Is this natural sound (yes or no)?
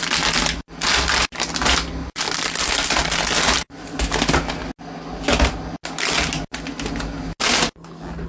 yes